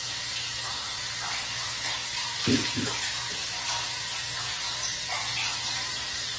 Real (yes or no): yes